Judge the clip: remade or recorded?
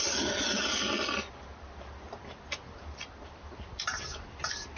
recorded